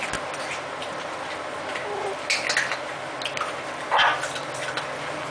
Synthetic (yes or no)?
no